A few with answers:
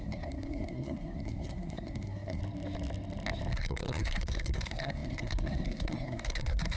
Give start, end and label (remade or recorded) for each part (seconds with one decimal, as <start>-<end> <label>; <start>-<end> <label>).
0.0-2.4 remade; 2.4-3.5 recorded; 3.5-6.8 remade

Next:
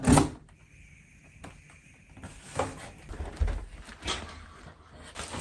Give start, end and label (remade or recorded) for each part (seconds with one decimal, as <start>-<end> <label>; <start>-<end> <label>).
0.0-5.4 recorded

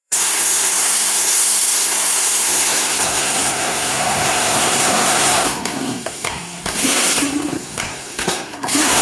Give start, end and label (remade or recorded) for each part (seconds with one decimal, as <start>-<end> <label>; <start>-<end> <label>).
0.0-9.0 remade

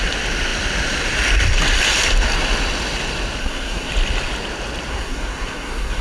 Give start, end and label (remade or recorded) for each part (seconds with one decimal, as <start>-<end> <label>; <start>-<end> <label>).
0.0-3.4 recorded; 3.4-3.9 remade; 3.9-4.9 recorded; 4.9-6.0 remade

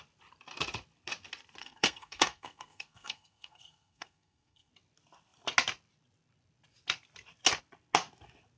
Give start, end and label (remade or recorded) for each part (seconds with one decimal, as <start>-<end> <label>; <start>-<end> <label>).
0.0-1.6 recorded; 1.6-4.7 remade; 4.7-8.6 recorded

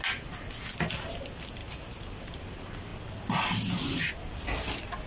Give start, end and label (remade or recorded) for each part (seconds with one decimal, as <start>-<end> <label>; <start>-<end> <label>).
0.0-5.1 recorded

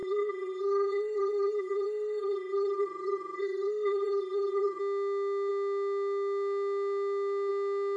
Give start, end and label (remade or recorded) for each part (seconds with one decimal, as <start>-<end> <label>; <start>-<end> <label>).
0.0-4.8 remade; 4.8-8.0 recorded